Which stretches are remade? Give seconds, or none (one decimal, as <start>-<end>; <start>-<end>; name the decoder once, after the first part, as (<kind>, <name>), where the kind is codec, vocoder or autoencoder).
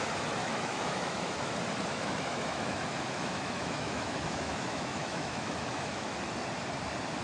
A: 0.4-1.5 (autoencoder, DAC-VAE); 1.9-6.2